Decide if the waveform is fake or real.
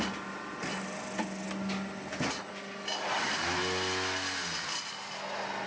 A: real